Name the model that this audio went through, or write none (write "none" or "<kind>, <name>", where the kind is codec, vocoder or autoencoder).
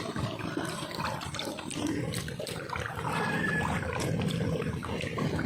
vocoder, BigVGAN v2